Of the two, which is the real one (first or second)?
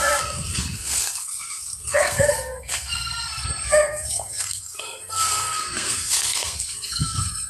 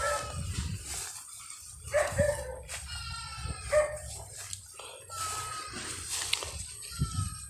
second